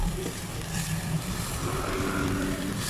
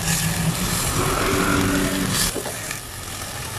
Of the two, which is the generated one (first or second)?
first